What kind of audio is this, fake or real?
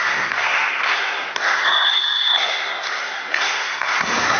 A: fake